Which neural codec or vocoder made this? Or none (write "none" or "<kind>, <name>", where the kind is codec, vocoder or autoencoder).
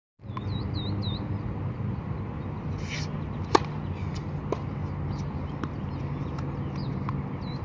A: none